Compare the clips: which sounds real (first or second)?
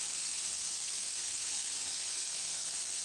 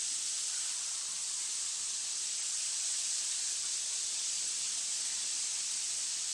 second